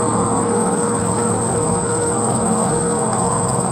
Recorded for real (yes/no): no